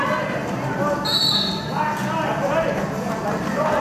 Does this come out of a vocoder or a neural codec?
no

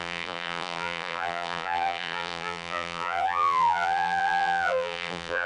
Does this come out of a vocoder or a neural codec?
yes